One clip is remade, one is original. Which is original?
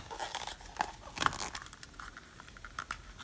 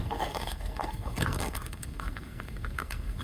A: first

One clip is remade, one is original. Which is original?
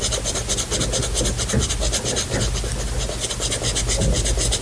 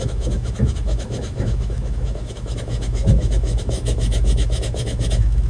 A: first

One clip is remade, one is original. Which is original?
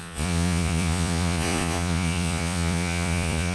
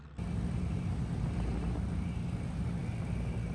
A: second